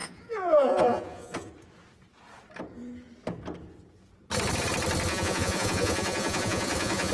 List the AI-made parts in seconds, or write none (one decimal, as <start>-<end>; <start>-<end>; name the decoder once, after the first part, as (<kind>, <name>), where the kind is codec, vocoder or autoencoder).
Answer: 0.0-1.5 (vocoder, Vocos); 5.1-7.1